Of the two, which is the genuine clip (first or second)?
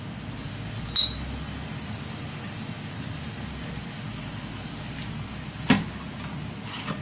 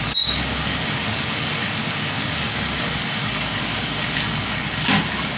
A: first